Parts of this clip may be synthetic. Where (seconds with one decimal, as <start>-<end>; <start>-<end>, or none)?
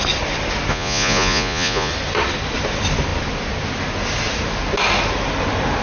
0.7-1.9